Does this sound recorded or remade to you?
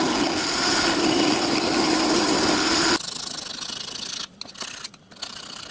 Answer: recorded